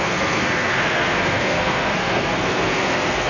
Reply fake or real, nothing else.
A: fake